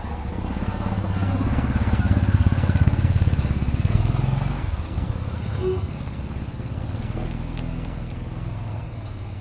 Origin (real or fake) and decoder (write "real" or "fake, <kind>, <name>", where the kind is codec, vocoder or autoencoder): fake, codec, SNAC